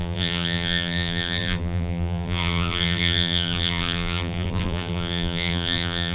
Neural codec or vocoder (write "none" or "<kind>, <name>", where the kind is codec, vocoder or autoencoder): vocoder, BigVGAN v2